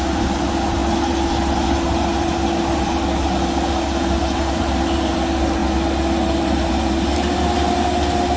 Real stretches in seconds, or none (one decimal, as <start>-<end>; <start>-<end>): 0.0-8.4